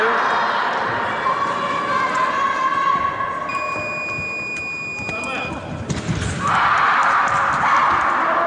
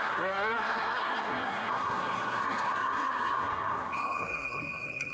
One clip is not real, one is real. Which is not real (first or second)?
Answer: second